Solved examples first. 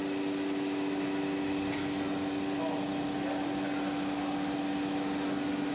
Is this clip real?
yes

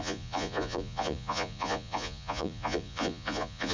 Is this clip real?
no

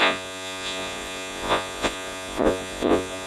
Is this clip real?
no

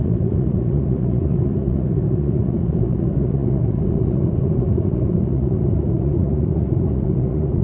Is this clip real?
no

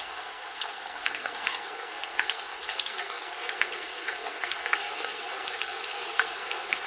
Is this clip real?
no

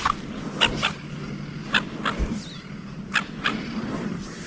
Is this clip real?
yes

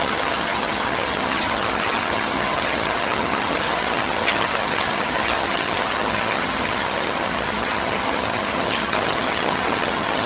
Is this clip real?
no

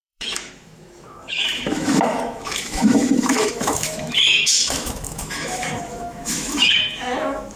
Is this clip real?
no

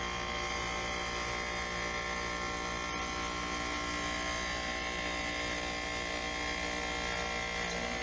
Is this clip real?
yes